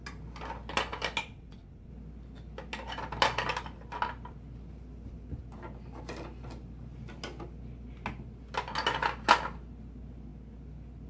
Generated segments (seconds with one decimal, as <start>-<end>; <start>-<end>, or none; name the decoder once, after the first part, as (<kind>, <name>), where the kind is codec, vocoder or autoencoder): 1.2-1.9 (vocoder, WaveNeXt)